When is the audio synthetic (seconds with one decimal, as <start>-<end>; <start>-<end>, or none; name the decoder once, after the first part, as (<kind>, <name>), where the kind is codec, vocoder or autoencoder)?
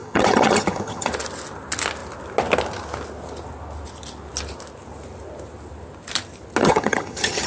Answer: 0.0-1.1 (vocoder, HiFi-GAN); 6.6-7.5